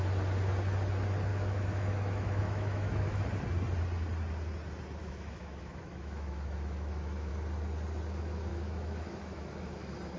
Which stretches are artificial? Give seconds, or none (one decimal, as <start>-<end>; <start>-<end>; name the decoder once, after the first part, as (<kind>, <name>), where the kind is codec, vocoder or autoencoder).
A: 1.3-3.2 (autoencoder, DAC-VAE); 5.0-7.3; 8.5-9.6